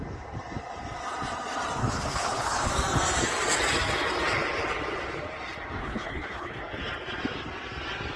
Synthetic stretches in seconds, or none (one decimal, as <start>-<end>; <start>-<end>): 1.8-2.7; 5.8-6.6